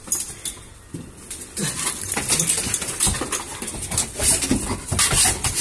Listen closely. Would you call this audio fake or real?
real